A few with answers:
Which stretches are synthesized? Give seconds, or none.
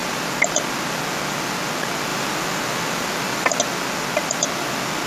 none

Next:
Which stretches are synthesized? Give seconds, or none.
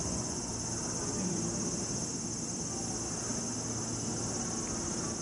0.0-0.5 (vocoder, Vocos)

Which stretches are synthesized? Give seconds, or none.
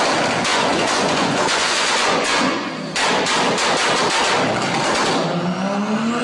0.5-2.7 (vocoder, Vocos)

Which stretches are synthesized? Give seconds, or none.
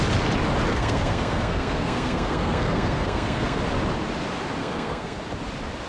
0.7-3.6 (codec, SNAC); 4.6-5.2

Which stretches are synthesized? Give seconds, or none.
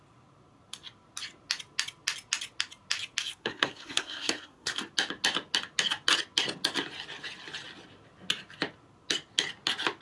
3.2-4.9 (codec, SNAC)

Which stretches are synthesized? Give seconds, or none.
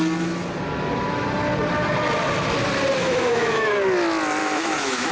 3.0-3.7 (autoencoder, DAC-VAE); 4.4-5.1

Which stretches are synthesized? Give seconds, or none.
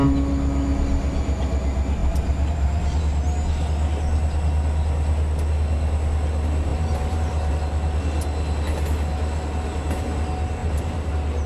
2.0-3.0 (vocoder, BigVGAN v2); 6.7-7.5; 10.6-11.1